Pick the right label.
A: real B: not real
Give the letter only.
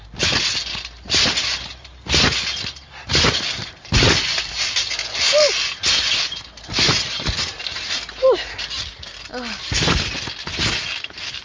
A